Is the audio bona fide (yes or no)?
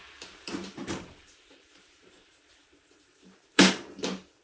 no